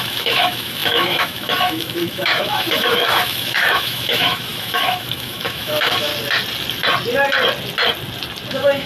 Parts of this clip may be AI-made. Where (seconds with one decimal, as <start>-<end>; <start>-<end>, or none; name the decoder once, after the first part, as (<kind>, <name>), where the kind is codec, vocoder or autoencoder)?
0.0-6.1 (autoencoder, DAC-VAE); 8.5-8.9